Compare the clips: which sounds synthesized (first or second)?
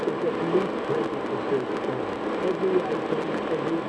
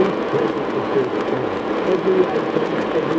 second